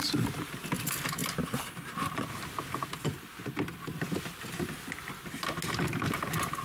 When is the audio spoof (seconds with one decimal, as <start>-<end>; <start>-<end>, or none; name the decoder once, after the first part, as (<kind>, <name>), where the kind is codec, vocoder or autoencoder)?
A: none